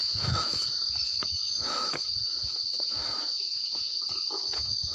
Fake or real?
fake